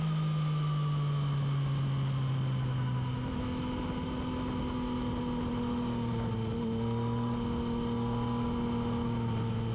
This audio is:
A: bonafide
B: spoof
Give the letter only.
A